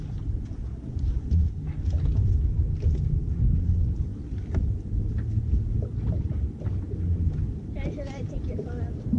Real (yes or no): yes